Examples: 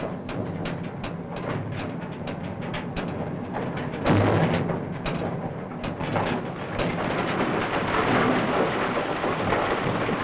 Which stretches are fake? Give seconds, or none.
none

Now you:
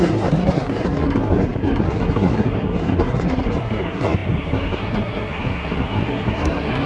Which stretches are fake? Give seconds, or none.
0.0-6.9 (codec, SNAC)

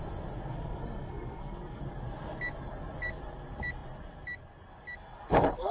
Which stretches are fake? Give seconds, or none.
0.5-1.8 (codec, SNAC)

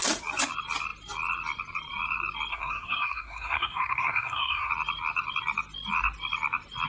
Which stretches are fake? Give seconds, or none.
2.5-4.7 (codec, SNAC)

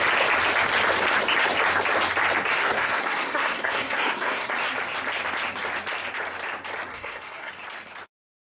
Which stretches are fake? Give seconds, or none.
2.6-4.5 (codec, SNAC); 6.9-7.5